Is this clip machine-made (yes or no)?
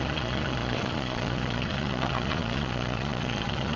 yes